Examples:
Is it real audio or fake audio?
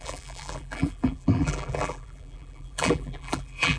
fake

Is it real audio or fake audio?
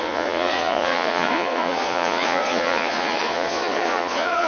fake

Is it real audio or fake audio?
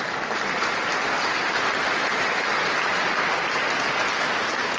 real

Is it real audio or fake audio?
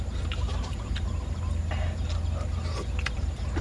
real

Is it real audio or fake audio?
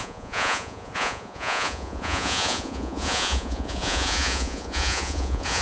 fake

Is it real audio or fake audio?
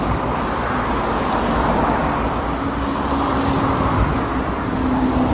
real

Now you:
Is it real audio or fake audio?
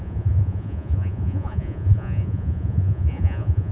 fake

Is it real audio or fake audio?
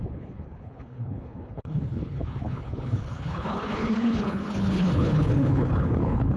fake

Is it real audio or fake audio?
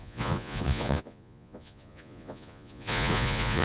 fake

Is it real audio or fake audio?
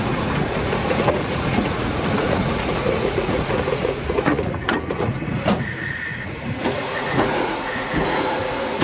fake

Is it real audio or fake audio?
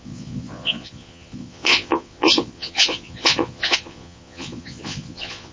fake